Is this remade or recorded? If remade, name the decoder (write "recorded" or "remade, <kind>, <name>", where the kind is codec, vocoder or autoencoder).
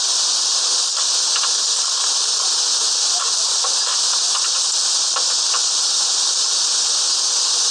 recorded